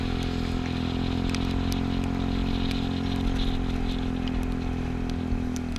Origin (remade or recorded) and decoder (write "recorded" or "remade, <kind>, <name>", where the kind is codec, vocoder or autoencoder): recorded